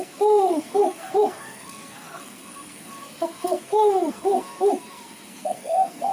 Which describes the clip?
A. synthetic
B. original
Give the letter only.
A